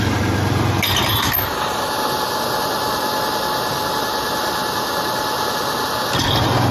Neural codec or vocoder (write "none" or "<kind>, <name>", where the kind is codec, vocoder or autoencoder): none